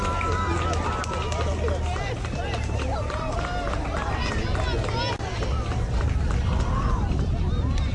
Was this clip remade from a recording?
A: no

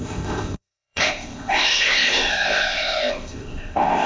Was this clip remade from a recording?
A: yes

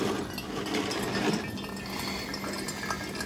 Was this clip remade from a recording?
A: no